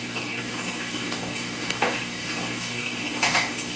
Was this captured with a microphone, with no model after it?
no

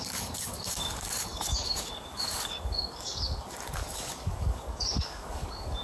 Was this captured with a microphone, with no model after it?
no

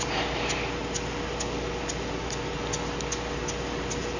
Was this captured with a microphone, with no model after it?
yes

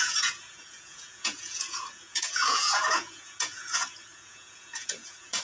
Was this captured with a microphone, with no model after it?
no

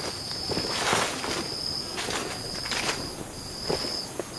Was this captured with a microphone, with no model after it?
yes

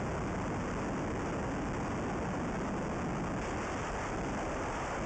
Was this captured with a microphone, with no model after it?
yes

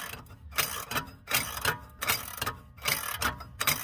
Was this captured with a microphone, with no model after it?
yes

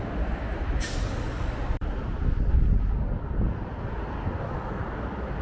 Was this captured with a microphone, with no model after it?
yes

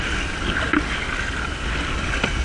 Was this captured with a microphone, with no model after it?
yes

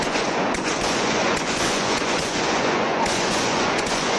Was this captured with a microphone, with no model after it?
no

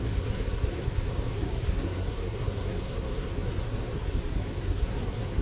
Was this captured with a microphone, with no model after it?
no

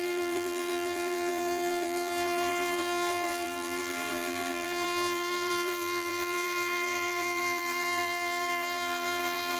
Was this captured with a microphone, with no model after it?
no